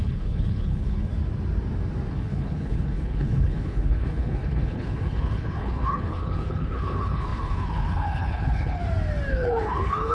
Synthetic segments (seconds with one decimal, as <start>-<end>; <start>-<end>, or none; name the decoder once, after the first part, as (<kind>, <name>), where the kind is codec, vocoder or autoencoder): 0.0-1.1 (codec, HILCodec); 2.1-8.8; 9.3-10.1